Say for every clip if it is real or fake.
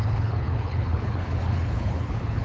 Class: fake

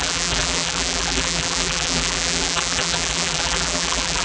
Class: fake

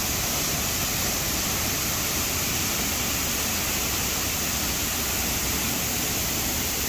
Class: real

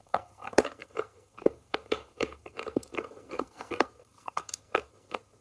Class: fake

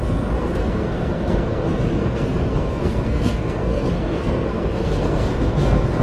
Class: fake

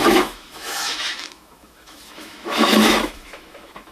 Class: fake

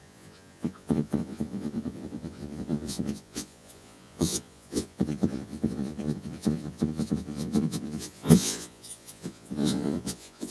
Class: fake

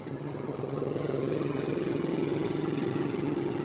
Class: fake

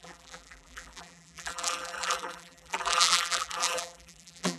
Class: fake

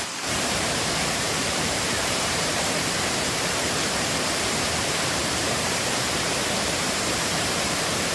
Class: fake